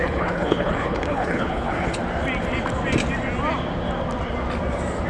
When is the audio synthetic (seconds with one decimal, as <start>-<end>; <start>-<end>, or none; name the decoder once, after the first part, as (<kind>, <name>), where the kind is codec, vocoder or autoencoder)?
0.0-2.0 (codec, HILCodec)